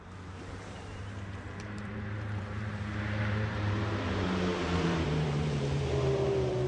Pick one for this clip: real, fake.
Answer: fake